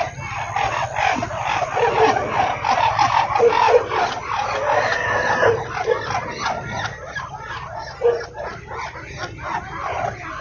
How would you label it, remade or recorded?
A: recorded